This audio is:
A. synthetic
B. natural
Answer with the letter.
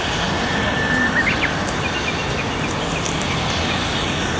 B